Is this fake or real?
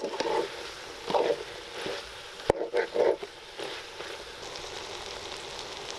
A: real